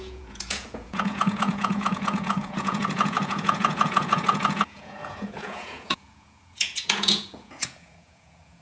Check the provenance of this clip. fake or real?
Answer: fake